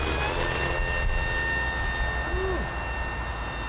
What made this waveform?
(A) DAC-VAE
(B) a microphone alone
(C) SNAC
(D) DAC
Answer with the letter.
B